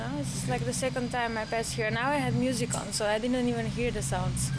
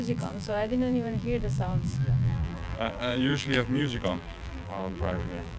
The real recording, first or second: first